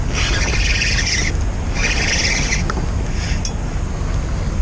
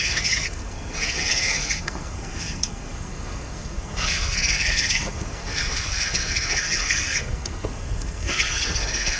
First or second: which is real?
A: first